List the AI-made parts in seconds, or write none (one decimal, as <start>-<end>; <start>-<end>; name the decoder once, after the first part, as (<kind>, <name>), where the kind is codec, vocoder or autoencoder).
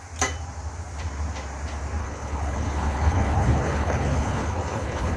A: 2.0-5.2 (codec, HILCodec)